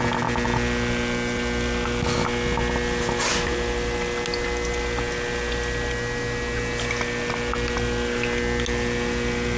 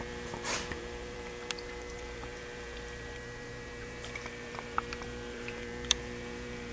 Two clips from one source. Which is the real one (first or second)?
first